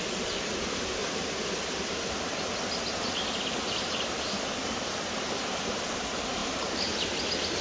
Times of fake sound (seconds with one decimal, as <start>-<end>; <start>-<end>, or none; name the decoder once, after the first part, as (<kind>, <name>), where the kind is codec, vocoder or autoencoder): none